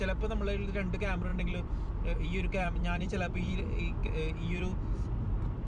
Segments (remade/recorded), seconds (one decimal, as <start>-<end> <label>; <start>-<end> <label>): 0.0-1.3 recorded; 1.3-3.6 remade; 3.6-4.0 recorded; 4.0-4.6 remade; 4.6-5.7 recorded